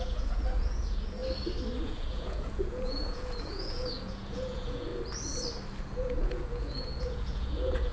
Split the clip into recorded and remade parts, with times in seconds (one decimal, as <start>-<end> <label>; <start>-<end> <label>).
0.0-1.2 remade; 1.2-1.8 recorded; 1.8-4.9 remade; 4.9-5.8 recorded; 5.8-7.9 remade